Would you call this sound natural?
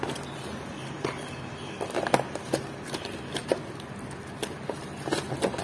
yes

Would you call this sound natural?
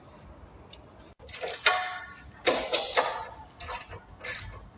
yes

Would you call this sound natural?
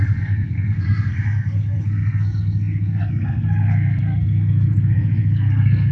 no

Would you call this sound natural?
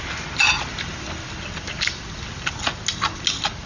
yes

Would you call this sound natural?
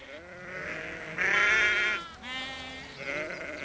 yes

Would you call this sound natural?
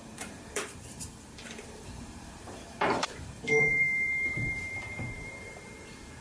no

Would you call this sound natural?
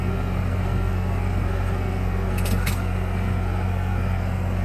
no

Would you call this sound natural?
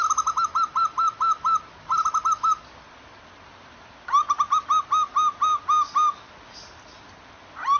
yes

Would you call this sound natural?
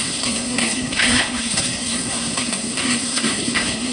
no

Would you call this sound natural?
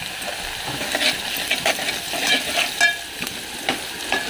yes